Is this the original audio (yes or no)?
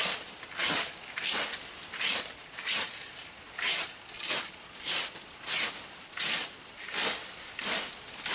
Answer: yes